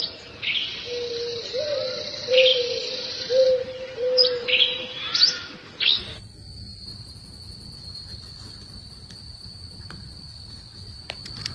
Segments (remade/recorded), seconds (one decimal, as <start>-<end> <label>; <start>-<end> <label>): 0.0-6.7 recorded; 6.7-11.5 remade